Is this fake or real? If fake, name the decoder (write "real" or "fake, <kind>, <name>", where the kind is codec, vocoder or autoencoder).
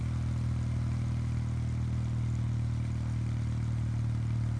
real